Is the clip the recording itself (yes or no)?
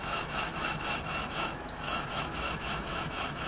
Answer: no